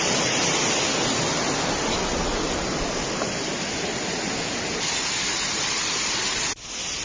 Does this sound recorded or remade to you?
recorded